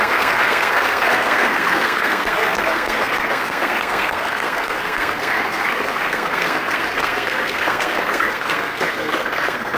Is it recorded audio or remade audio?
remade